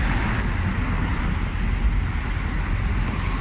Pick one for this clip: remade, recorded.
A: recorded